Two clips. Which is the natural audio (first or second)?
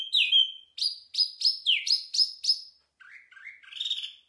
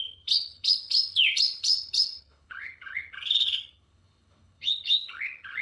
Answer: first